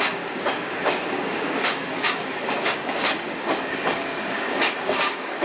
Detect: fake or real fake